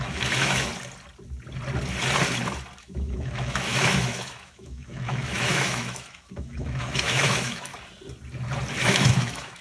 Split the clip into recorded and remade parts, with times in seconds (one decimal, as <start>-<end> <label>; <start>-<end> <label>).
0.0-0.7 remade; 0.7-2.8 recorded; 2.8-7.7 remade; 7.7-8.8 recorded; 8.8-9.6 remade

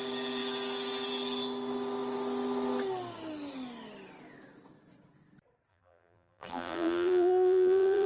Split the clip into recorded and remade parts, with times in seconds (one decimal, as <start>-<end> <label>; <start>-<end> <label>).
0.0-5.7 recorded; 5.7-8.1 remade

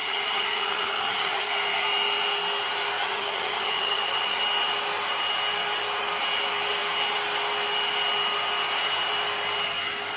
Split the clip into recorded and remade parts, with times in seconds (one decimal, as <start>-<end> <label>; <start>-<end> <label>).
0.0-1.5 remade; 1.5-3.0 recorded; 3.0-4.4 remade; 4.4-10.2 recorded

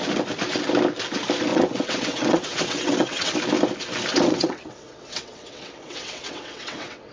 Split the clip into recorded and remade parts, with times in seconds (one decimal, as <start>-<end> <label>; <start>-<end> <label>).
0.0-1.5 recorded; 1.5-3.3 remade; 3.3-4.1 recorded; 4.1-7.1 remade

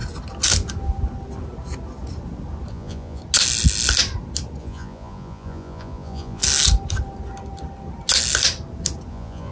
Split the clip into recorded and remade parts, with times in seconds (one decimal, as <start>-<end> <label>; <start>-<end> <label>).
0.0-2.7 recorded; 2.7-3.2 remade; 3.2-4.6 recorded; 4.6-6.4 remade; 6.4-9.1 recorded; 9.1-9.5 remade

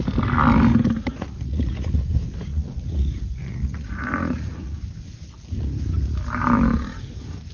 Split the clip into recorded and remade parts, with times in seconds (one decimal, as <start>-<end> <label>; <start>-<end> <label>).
0.0-1.0 recorded; 1.0-2.1 remade; 2.1-2.5 recorded; 2.5-4.8 remade; 4.8-7.5 recorded

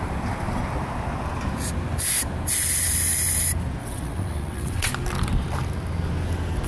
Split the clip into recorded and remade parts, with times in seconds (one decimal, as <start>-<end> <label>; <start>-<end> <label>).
0.0-3.8 recorded; 3.8-4.9 remade; 4.9-6.7 recorded

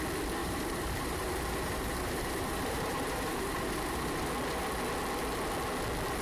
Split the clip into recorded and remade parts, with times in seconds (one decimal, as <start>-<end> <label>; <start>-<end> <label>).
0.0-0.4 recorded; 0.4-4.1 remade; 4.1-6.2 recorded